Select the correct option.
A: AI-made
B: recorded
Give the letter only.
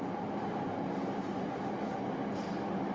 B